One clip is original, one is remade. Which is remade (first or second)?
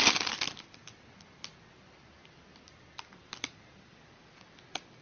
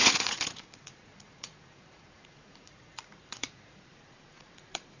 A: second